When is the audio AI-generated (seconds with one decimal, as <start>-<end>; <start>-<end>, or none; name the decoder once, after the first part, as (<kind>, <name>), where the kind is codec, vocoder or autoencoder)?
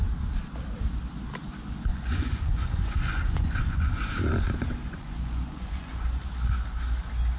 1.9-6.3 (vocoder, Vocos)